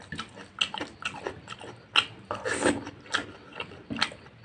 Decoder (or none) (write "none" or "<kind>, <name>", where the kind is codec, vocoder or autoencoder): none